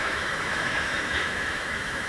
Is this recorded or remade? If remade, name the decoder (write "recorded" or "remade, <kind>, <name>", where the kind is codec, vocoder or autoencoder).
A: remade, autoencoder, DAC-VAE